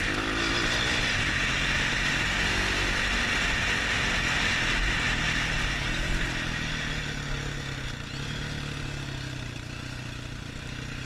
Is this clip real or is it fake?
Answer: real